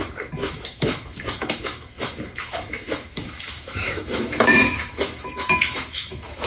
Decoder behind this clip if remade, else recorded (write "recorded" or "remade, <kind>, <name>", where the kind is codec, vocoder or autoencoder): remade, autoencoder, DAC-VAE